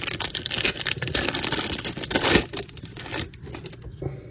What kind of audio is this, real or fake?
real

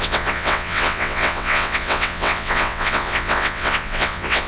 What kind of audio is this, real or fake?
fake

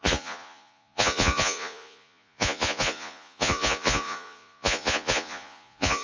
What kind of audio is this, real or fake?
fake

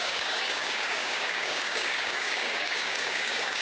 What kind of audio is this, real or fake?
fake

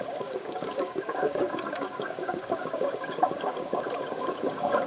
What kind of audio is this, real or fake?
fake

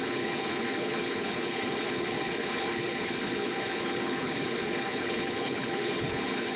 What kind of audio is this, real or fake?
fake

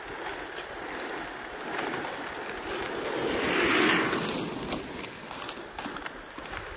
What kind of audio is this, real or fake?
real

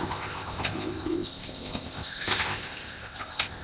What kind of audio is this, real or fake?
fake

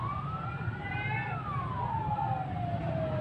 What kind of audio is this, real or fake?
real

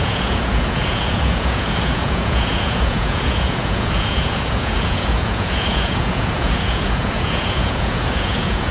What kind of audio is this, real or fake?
fake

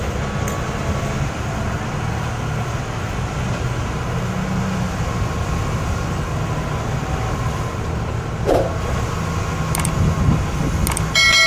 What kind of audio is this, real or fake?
real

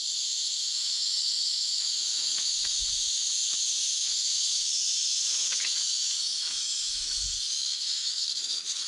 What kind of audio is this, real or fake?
fake